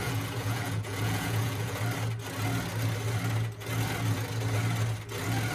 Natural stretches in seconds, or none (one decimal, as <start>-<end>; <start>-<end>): 1.8-5.5